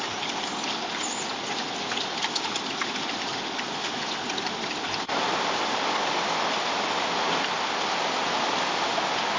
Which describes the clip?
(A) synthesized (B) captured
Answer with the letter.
B